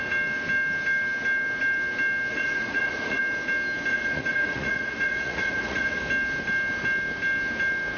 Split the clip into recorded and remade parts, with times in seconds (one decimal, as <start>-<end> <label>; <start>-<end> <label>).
0.0-2.3 recorded; 2.3-3.2 remade; 3.2-3.9 recorded; 3.9-6.0 remade; 6.0-8.0 recorded